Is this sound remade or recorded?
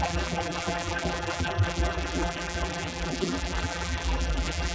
remade